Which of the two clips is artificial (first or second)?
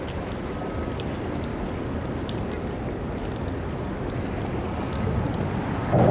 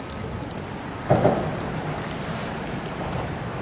second